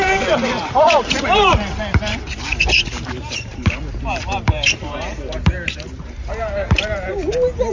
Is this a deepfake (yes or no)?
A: yes